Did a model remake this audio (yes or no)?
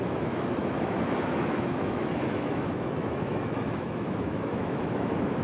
yes